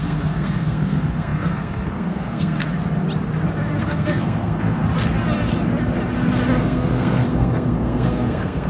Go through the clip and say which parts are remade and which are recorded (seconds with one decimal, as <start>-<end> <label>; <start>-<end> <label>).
0.0-2.6 remade; 2.6-3.8 recorded; 3.8-4.8 remade; 4.8-6.6 recorded; 6.6-8.7 remade